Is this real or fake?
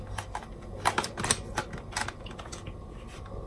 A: real